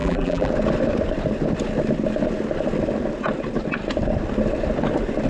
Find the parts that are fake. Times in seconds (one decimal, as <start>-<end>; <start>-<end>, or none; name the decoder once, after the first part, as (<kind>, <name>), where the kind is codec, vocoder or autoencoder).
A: 0.0-0.5 (vocoder, BigVGAN v2)